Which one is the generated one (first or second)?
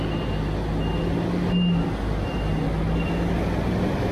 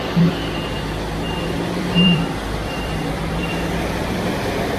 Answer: second